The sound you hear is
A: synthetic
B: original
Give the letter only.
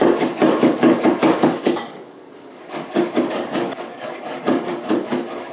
A